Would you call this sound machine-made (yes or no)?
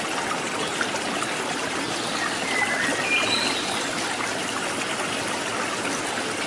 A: no